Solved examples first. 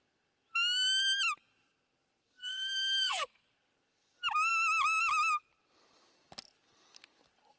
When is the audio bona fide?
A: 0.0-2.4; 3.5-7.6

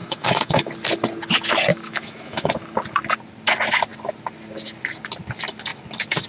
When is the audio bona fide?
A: 0.7-1.7; 2.5-6.3

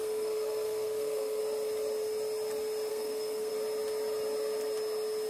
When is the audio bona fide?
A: 1.4-2.9; 3.5-5.3

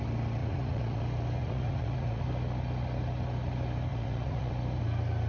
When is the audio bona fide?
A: 0.0-0.4; 1.0-1.4; 2.2-3.9; 4.5-5.3